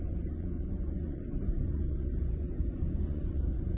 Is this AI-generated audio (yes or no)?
yes